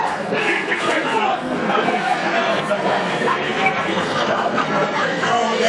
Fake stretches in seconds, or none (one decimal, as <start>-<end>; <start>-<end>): 0.0-5.7